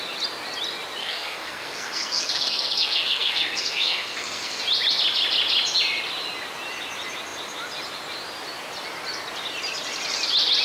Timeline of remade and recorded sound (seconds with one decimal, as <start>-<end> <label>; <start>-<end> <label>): 0.0-1.0 recorded; 1.0-4.6 remade; 4.6-10.6 recorded